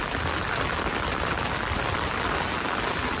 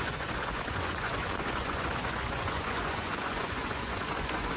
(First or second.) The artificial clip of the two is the second